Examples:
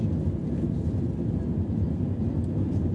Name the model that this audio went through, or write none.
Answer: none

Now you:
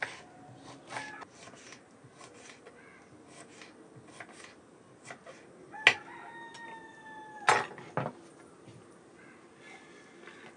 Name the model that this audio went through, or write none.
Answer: none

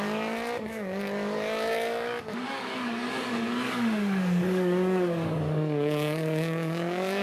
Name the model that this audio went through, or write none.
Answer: codec, DAC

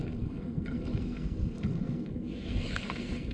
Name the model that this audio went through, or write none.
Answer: codec, SNAC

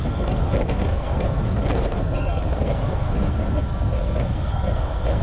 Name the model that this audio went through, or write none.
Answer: codec, SNAC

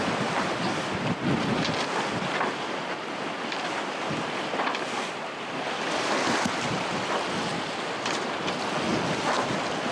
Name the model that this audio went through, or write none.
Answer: none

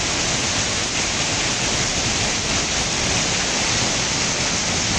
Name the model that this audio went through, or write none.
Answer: none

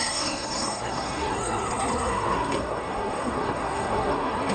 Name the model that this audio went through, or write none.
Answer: codec, SNAC